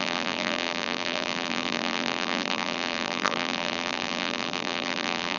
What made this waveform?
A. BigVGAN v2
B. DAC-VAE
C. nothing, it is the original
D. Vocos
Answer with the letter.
A